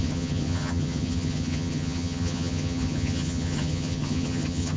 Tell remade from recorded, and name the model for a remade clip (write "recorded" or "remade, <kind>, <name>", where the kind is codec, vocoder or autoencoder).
remade, vocoder, HiFi-GAN